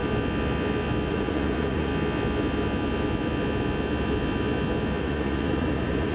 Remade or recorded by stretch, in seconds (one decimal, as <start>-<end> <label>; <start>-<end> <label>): 0.0-1.1 recorded; 1.1-1.9 remade; 1.9-5.0 recorded; 5.0-6.1 remade